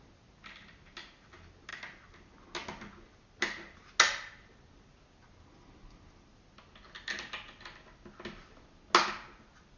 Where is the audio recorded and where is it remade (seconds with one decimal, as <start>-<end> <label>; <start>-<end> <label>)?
0.0-9.8 recorded